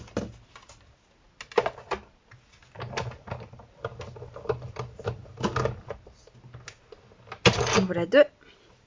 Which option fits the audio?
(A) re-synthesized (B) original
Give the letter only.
B